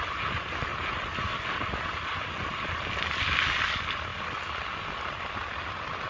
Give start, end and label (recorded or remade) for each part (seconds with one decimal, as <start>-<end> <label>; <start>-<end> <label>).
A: 0.0-6.1 recorded